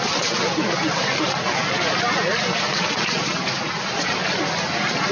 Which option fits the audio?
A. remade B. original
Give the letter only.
B